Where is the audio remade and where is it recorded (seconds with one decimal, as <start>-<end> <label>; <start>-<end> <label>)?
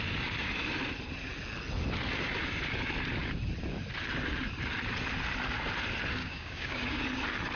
0.0-6.2 recorded; 6.2-7.0 remade; 7.0-7.6 recorded